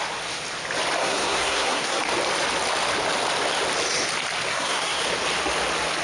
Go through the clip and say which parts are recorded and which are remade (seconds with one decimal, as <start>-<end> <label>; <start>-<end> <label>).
0.0-1.0 recorded; 1.0-2.0 remade; 2.0-4.5 recorded; 4.5-5.0 remade; 5.0-6.0 recorded

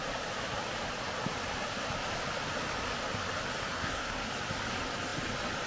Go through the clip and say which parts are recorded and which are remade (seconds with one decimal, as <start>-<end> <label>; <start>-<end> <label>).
0.0-3.6 recorded; 3.6-4.3 remade; 4.3-5.7 recorded

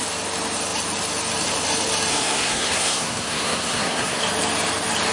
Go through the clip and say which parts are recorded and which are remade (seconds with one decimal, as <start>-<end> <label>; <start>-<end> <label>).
0.0-2.1 recorded; 2.1-4.2 remade; 4.2-5.1 recorded

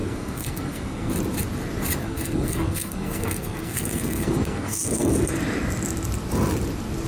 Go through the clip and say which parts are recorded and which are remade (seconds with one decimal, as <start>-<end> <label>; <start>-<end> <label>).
0.0-1.1 remade; 1.1-2.0 recorded; 2.0-5.1 remade; 5.1-7.1 recorded

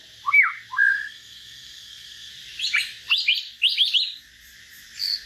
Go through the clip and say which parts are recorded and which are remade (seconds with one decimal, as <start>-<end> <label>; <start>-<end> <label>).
0.0-0.9 recorded; 0.9-2.3 remade; 2.3-5.3 recorded